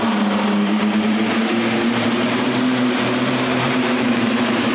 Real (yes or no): no